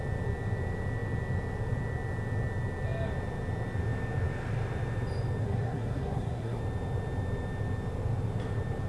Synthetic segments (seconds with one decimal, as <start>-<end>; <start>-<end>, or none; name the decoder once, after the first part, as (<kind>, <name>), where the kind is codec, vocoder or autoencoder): 5.4-6.6 (codec, SNAC)